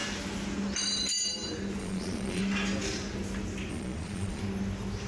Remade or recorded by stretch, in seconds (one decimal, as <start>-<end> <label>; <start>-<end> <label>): 0.0-1.8 recorded; 1.8-2.4 remade; 2.4-3.7 recorded; 3.7-4.4 remade; 4.4-5.1 recorded